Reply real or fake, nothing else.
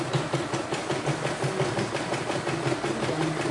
real